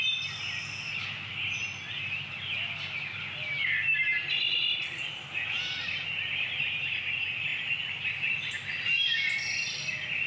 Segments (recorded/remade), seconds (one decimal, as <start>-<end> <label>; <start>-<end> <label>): 0.0-10.3 recorded